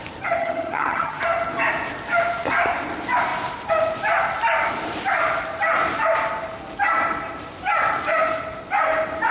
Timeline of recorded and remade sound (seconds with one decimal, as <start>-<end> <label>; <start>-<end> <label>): 0.0-0.4 recorded; 0.4-1.2 remade; 1.2-9.3 recorded